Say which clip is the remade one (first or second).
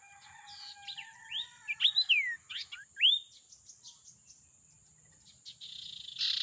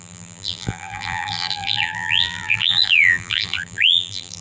second